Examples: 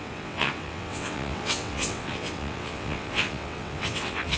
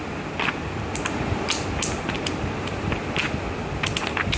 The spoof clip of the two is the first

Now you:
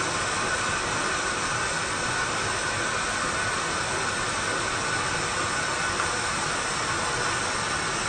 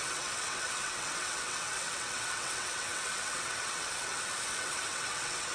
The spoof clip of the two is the second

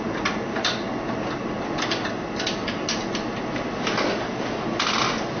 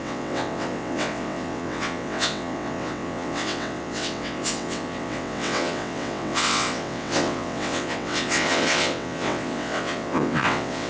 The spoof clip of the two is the second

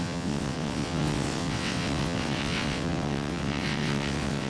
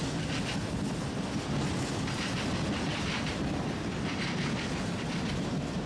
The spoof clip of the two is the first